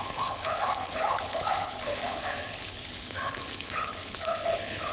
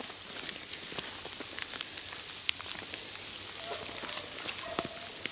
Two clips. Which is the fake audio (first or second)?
first